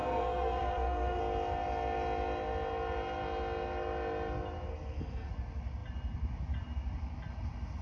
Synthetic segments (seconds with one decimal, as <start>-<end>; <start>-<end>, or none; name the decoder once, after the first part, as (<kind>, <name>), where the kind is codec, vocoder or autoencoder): 0.0-1.2 (codec, SNAC); 4.7-5.3